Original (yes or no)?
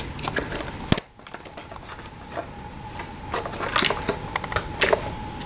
yes